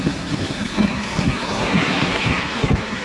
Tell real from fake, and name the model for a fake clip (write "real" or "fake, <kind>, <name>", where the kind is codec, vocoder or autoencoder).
fake, codec, SNAC